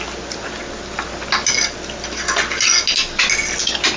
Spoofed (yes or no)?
no